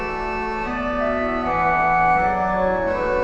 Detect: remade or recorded recorded